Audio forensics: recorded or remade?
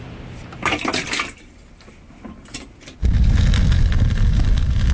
recorded